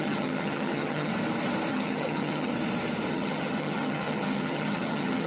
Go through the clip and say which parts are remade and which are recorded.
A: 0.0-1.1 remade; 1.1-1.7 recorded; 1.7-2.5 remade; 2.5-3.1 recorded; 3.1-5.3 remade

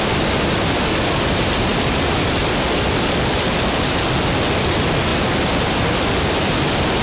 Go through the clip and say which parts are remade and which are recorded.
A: 0.0-1.7 recorded; 1.7-2.4 remade; 2.4-5.1 recorded; 5.1-5.9 remade; 5.9-7.0 recorded

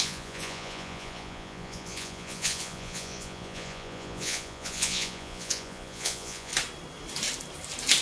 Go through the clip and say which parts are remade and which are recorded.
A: 0.0-6.5 remade; 6.5-8.0 recorded

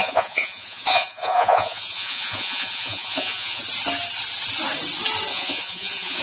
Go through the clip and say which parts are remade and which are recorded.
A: 0.0-3.6 remade; 3.6-5.3 recorded; 5.3-6.2 remade

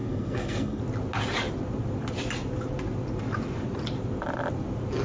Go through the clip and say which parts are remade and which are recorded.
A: 0.0-0.8 remade; 0.8-5.0 recorded

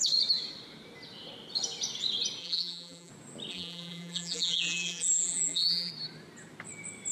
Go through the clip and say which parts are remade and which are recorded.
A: 0.0-2.4 recorded; 2.4-3.1 remade; 3.1-3.5 recorded; 3.5-5.9 remade; 5.9-7.1 recorded